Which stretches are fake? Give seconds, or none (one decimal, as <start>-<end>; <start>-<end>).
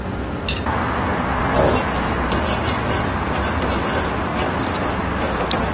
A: 1.1-1.6; 4.3-5.0